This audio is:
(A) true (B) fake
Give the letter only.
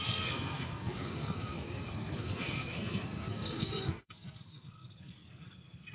B